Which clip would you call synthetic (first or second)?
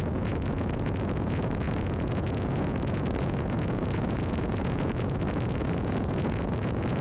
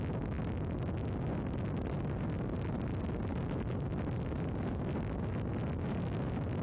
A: first